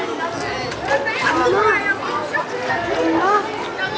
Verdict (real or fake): real